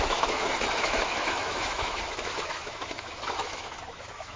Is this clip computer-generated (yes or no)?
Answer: yes